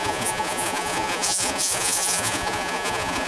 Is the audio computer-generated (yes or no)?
yes